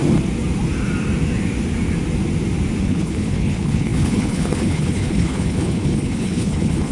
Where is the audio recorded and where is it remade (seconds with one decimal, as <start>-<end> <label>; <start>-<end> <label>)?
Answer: 0.0-2.8 recorded; 2.8-6.9 remade